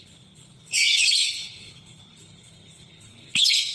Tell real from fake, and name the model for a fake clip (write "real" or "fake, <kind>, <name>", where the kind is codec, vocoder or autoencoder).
fake, codec, HILCodec